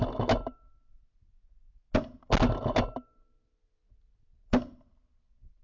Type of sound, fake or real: real